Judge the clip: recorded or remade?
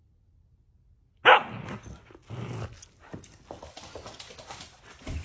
recorded